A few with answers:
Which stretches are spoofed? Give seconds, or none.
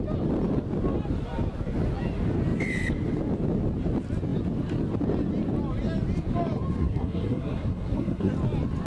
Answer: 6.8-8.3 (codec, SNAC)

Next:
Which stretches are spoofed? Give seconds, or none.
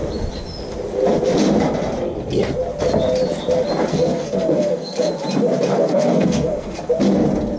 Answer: 3.9-5.1 (codec, SNAC); 5.7-6.9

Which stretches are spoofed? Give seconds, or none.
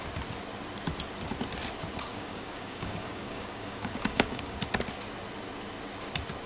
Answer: 2.1-4.6 (codec, DAC)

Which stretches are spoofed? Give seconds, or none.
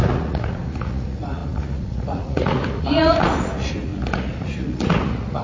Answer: 0.0-5.4 (vocoder, Vocos)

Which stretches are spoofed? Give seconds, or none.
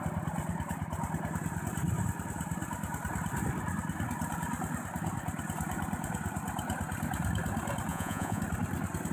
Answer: 7.9-8.4 (vocoder, Vocos)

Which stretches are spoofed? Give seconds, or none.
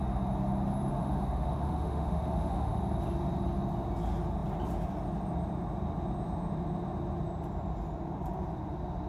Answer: 0.9-2.8 (autoencoder, DAC-VAE)